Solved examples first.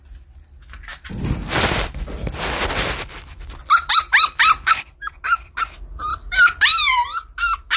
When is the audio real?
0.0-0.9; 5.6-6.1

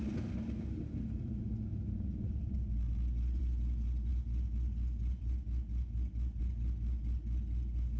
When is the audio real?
0.0-8.0